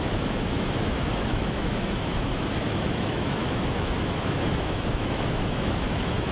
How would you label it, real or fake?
fake